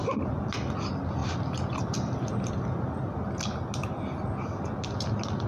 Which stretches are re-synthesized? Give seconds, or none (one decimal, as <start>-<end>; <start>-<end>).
1.2-3.0